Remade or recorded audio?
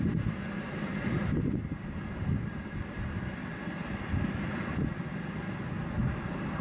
recorded